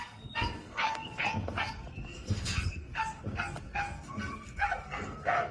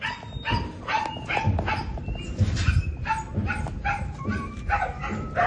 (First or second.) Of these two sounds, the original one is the second